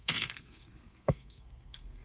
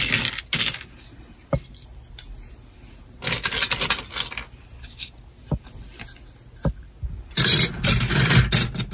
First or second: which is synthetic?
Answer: first